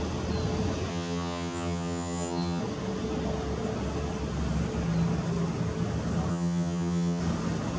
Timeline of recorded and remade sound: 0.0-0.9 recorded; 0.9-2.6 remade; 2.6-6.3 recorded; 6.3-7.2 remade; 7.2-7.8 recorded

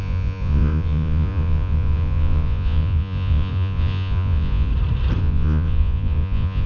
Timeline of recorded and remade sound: 0.0-4.7 remade; 4.7-5.2 recorded; 5.2-6.7 remade